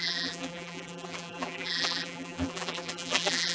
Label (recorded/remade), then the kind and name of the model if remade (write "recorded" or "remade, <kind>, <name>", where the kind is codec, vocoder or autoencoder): remade, vocoder, BigVGAN v2